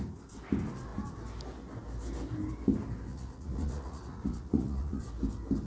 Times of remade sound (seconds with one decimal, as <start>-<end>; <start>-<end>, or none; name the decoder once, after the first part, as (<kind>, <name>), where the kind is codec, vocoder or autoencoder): 3.1-5.0 (vocoder, Vocos)